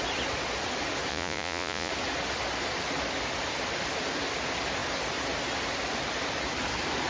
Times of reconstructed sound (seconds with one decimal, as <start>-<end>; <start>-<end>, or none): 1.1-1.9